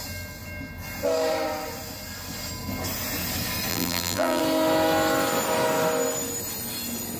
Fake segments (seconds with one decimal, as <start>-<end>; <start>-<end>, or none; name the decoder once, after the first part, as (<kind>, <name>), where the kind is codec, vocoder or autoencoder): 3.7-4.4 (vocoder, BigVGAN v2)

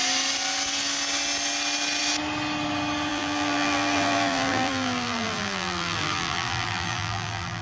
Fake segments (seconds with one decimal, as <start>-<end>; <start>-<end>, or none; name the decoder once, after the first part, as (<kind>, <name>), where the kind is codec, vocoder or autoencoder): 3.1-7.6 (vocoder, BigVGAN v2)

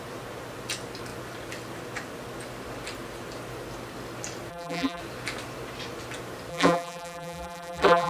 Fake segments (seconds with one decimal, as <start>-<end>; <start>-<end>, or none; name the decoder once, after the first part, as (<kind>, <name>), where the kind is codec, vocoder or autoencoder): 4.5-5.0 (vocoder, BigVGAN v2); 6.5-8.1

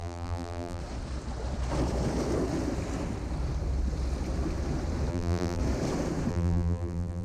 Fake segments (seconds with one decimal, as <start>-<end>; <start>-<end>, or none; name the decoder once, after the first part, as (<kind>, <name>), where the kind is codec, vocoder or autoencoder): 0.0-0.8 (vocoder, BigVGAN v2); 5.1-5.6; 6.3-7.2

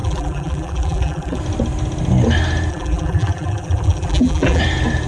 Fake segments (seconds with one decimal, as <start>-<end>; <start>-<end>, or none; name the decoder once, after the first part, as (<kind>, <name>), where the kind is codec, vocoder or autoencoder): 0.0-1.4 (vocoder, BigVGAN v2); 2.7-4.6

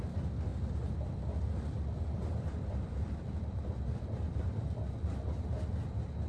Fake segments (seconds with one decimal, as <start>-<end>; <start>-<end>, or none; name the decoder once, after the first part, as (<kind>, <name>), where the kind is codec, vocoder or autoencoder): 0.5-4.1 (vocoder, BigVGAN v2)

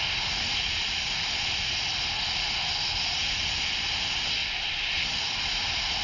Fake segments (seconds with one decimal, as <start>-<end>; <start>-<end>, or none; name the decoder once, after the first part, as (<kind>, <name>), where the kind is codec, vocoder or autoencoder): 4.4-5.1 (vocoder, BigVGAN v2)